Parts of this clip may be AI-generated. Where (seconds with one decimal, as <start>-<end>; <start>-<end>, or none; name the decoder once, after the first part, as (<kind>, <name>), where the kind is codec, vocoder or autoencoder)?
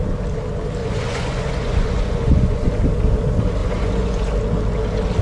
0.8-2.7 (vocoder, Vocos); 3.6-4.3